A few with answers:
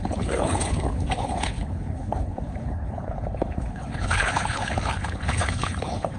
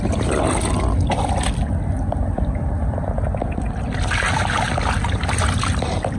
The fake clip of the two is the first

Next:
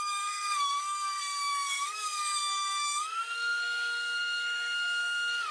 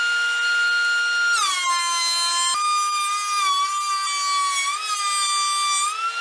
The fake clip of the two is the first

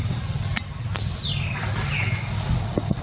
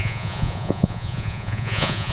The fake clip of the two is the second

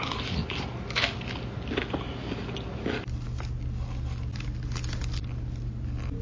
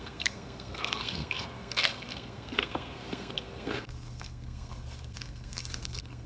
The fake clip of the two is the second